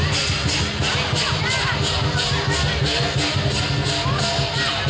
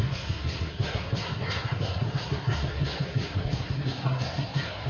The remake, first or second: second